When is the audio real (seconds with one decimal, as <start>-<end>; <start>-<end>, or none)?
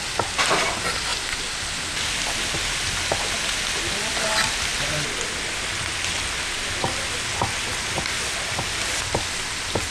0.0-9.9